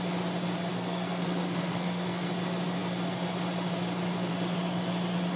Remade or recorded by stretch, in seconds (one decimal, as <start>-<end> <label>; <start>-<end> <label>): 0.0-0.7 recorded; 0.7-2.3 remade; 2.3-5.4 recorded